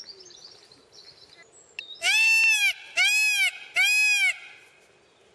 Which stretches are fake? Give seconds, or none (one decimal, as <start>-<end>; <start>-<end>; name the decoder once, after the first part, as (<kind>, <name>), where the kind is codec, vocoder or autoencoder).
none